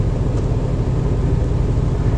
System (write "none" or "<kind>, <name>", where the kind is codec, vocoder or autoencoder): none